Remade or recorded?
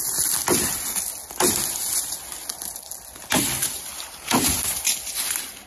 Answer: recorded